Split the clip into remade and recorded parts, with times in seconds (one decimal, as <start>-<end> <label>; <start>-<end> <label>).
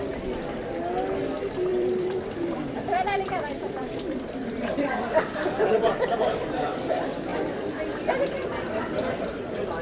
0.0-1.7 recorded; 1.7-6.4 remade; 6.4-9.8 recorded